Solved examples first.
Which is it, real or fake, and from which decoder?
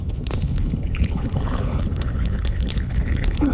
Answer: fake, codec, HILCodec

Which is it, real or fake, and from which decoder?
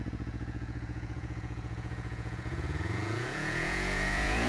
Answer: fake, vocoder, Vocos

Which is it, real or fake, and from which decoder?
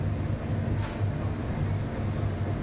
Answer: real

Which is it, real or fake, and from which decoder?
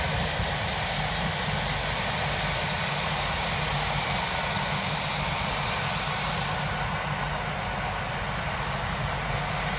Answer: real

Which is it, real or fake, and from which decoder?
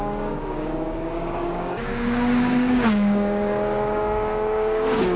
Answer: fake, codec, DAC